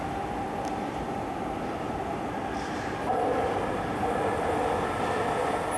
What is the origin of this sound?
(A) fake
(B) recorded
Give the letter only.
B